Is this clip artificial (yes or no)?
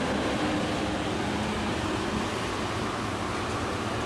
no